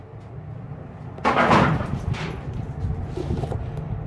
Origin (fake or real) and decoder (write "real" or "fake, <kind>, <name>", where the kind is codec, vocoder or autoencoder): real